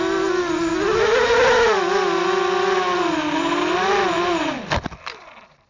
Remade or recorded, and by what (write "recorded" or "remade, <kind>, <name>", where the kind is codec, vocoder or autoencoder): recorded